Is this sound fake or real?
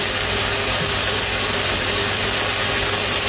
real